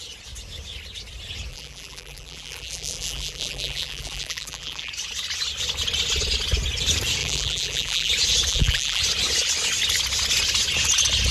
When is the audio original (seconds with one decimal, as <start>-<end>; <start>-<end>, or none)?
0.0-1.5; 4.9-7.2; 8.1-8.5; 9.0-11.3